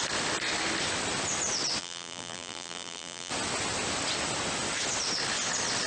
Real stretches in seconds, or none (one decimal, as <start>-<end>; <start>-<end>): 0.0-1.8; 3.3-5.9